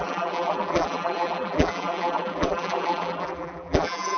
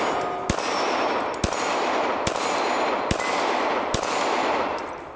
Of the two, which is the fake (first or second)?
first